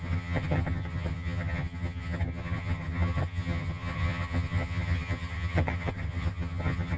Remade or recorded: remade